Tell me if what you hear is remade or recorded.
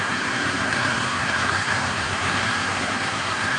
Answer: remade